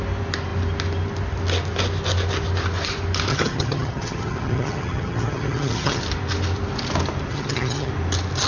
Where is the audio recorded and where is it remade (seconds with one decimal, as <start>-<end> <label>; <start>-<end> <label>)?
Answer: 0.0-3.3 recorded; 3.3-6.0 remade; 6.0-7.3 recorded; 7.3-7.9 remade; 7.9-8.5 recorded